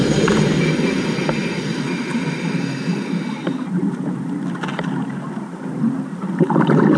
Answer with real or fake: real